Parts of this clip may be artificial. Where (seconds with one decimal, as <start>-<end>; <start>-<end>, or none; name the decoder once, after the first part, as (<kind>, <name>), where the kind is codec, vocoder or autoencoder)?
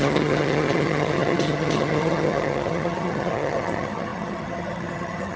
0.0-5.4 (vocoder, HiFi-GAN)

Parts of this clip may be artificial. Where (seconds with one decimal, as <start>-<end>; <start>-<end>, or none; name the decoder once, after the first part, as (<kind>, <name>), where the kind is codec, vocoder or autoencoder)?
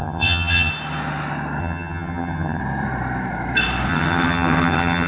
0.0-0.7 (vocoder, HiFi-GAN); 1.6-2.6; 3.9-5.1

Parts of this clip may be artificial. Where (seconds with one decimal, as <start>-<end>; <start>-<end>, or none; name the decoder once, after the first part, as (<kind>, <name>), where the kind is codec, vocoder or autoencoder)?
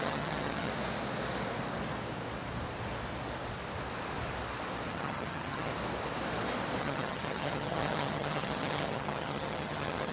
0.0-0.7 (vocoder, HiFi-GAN); 4.9-5.7; 6.8-10.1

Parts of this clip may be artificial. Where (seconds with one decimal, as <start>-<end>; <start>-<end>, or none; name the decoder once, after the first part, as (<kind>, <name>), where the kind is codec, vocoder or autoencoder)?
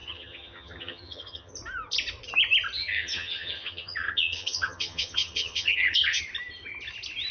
0.0-1.5 (vocoder, HiFi-GAN); 2.8-6.2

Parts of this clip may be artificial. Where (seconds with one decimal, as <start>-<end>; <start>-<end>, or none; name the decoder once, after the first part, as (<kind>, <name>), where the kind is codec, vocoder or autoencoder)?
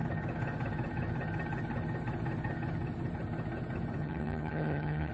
4.0-5.1 (vocoder, HiFi-GAN)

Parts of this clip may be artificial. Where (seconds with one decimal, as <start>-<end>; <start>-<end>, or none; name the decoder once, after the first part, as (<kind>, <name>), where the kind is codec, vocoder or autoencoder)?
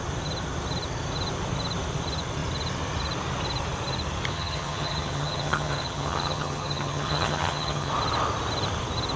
4.3-7.9 (vocoder, HiFi-GAN)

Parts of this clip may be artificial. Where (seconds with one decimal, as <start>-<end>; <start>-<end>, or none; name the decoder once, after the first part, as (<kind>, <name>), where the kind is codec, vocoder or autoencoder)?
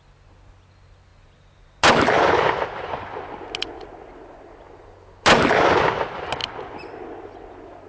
none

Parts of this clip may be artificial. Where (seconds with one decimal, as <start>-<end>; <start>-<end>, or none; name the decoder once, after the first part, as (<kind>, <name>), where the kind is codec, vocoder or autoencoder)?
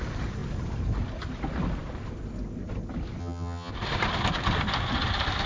3.2-3.7 (vocoder, HiFi-GAN)